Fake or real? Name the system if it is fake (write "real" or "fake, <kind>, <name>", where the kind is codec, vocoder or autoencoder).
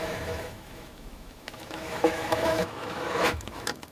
fake, autoencoder, DAC-VAE